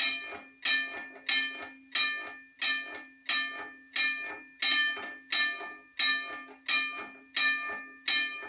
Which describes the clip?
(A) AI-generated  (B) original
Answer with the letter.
B